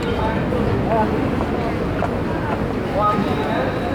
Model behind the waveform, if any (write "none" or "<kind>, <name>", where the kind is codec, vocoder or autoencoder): none